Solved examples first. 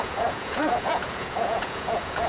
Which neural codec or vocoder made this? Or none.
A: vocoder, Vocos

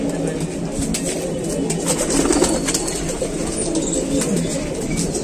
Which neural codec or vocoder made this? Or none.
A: none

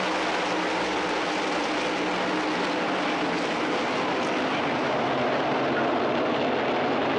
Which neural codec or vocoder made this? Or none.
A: none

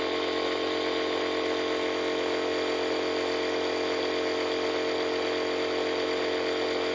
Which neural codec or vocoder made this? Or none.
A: none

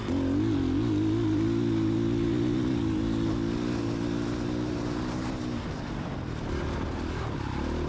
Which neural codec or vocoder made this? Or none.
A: none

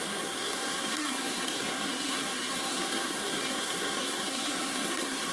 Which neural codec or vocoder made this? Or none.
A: codec, SNAC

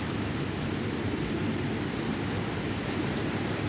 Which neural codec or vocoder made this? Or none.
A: none